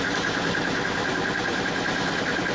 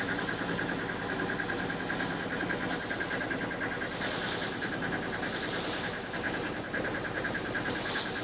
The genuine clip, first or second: second